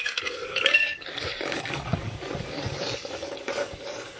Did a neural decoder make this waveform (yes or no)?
yes